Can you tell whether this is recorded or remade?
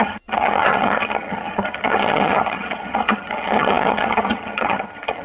remade